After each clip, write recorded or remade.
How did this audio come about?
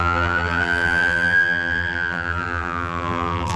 remade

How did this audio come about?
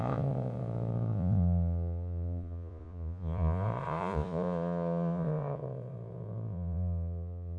remade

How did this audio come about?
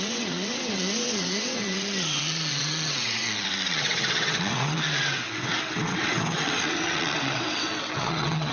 remade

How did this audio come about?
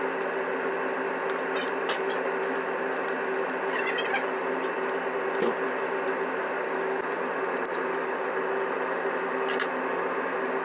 recorded